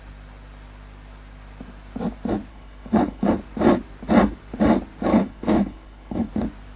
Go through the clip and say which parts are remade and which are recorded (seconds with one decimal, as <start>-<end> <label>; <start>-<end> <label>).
0.0-2.5 recorded; 2.5-3.3 remade; 3.3-5.1 recorded; 5.1-6.3 remade; 6.3-6.8 recorded